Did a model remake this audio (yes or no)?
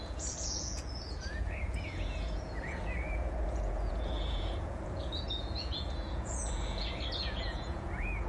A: yes